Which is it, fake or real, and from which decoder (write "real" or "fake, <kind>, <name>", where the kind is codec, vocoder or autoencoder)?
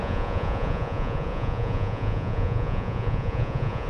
fake, vocoder, Vocos